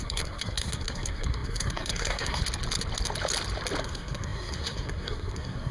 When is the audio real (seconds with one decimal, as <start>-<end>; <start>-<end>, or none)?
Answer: 2.4-3.8